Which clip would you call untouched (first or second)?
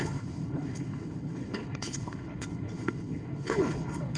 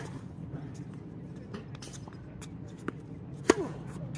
second